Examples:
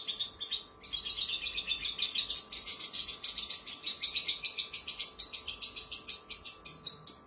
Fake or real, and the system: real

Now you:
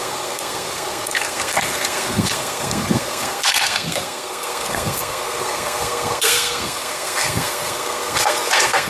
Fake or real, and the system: fake, codec, SNAC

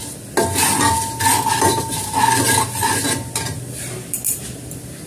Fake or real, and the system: real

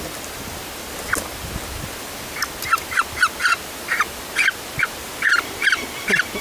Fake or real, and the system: real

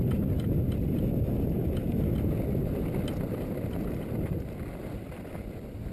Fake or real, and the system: real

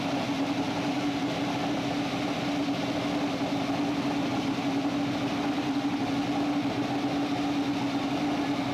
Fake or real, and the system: real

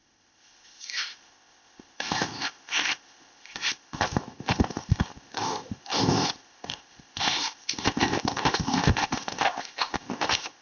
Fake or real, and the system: fake, codec, ZipCodec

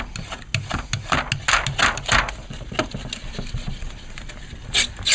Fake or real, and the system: real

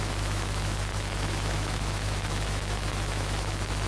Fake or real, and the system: fake, autoencoder, DAC-VAE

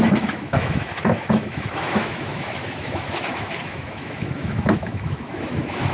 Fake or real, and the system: fake, autoencoder, DAC-VAE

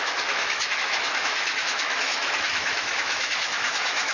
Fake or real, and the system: fake, autoencoder, DAC-VAE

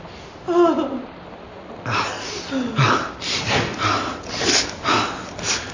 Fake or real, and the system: real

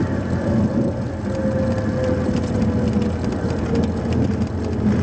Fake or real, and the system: real